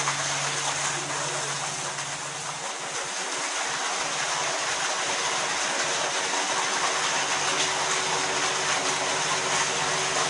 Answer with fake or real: real